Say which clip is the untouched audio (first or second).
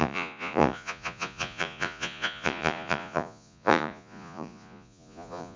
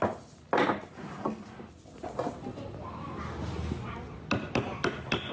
second